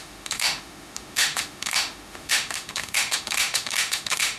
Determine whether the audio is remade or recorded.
remade